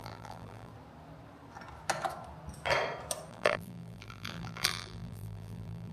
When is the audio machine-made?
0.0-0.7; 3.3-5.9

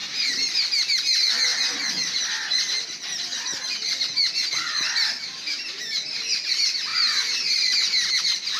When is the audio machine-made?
6.9-8.1

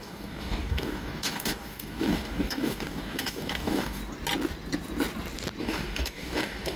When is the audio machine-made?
0.0-4.0; 5.6-6.8

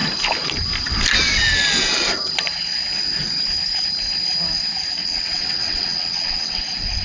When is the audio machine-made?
5.0-6.6

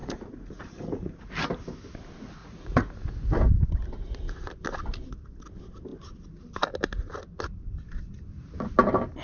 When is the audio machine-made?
0.0-1.2; 2.4-3.3

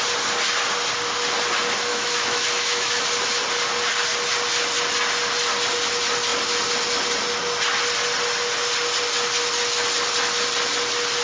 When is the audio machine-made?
1.9-3.0

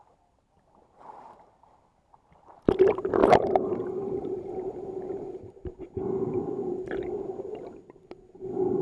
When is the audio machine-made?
3.2-5.5

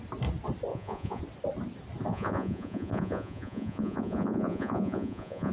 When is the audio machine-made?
0.7-1.2; 2.1-5.5